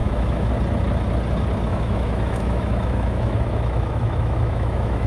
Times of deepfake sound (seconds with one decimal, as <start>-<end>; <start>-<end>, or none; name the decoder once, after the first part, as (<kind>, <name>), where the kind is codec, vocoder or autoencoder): 0.0-0.5 (autoencoder, DAC-VAE); 1.7-5.1

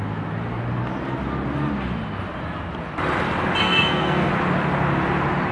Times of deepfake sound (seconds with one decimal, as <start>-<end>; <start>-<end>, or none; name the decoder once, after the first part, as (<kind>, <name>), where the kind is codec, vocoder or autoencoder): 3.6-4.3 (codec, SNAC)

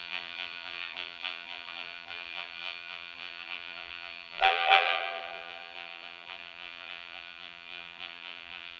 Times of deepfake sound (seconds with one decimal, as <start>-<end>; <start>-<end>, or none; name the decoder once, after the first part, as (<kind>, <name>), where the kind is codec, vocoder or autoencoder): 0.0-8.8 (vocoder, BigVGAN v2)